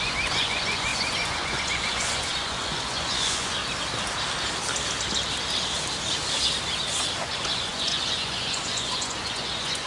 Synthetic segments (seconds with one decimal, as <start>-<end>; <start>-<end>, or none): 0.0-3.6; 7.2-9.9